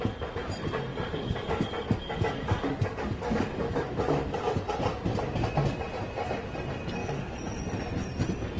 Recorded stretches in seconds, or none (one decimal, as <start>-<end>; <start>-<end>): 0.0-0.9; 4.3-7.0; 7.6-8.6